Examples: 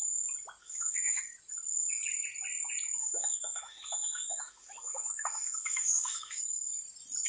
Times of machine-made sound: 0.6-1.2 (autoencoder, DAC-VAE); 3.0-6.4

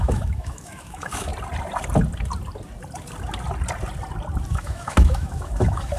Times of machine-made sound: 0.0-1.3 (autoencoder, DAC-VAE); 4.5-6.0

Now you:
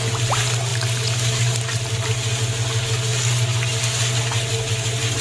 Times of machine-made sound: none